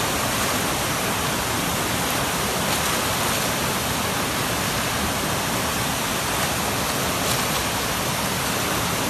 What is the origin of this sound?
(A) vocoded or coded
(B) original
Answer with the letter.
B